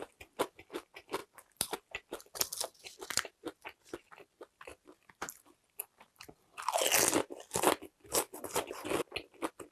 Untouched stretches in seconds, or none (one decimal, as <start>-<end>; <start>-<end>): 0.0-9.7